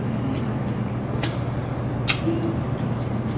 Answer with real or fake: real